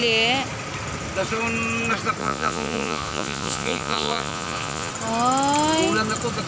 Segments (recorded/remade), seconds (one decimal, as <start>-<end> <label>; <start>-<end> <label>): 0.0-2.2 recorded; 2.2-4.9 remade; 4.9-6.5 recorded